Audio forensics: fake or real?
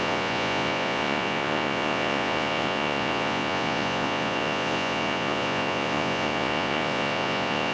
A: fake